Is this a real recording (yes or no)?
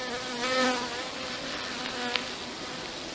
yes